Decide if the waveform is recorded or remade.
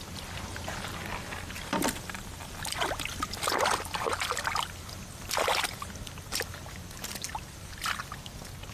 recorded